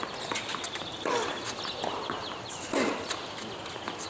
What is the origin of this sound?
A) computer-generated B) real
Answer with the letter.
B